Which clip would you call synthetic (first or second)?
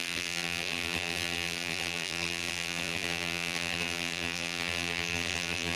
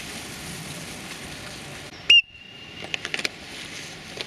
first